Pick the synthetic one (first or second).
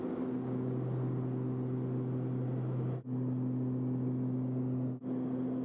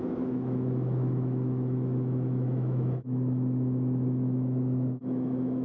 second